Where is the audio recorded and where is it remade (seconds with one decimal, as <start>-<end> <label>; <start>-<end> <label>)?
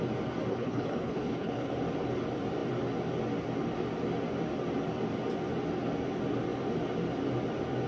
0.0-0.5 recorded; 0.5-1.7 remade; 1.7-7.9 recorded